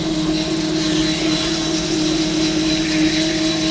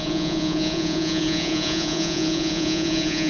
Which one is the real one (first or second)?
first